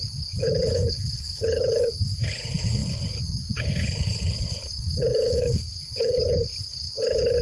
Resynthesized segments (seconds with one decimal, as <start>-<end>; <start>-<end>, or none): 0.0-7.4